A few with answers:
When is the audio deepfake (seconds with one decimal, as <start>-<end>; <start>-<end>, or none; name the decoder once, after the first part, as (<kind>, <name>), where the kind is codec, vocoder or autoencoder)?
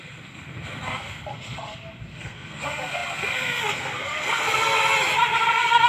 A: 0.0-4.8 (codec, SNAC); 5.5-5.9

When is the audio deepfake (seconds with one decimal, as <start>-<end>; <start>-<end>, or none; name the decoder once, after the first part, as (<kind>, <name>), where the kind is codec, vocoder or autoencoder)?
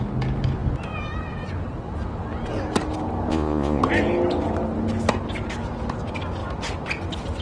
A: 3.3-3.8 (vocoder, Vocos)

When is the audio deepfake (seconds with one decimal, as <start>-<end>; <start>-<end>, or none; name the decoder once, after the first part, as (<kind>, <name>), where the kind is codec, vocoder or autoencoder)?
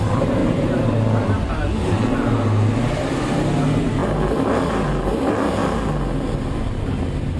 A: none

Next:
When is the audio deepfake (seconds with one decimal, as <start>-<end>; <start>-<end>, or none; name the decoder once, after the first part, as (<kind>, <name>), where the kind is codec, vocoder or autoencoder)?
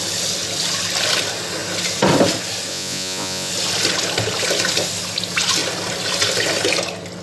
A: 2.7-3.5 (vocoder, Vocos)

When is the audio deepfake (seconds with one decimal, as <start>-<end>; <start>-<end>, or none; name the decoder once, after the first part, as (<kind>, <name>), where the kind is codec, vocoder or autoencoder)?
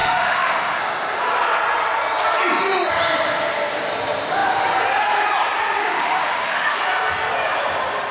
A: 0.0-0.8 (autoencoder, DAC-VAE); 5.8-6.8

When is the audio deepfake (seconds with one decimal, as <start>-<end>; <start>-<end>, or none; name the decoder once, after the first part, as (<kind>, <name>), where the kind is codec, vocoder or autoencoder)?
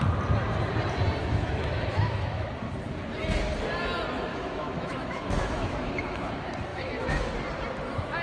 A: 1.2-2.5 (autoencoder, DAC-VAE); 4.3-6.3; 6.7-7.3